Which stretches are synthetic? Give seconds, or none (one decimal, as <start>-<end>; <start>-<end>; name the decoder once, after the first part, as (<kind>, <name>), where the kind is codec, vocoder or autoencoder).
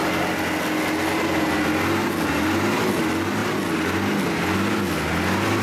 none